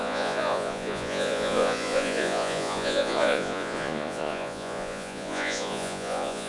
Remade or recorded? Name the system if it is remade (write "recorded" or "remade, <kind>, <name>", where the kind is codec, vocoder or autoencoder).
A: remade, vocoder, Vocos